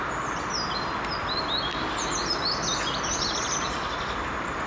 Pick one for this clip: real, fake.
real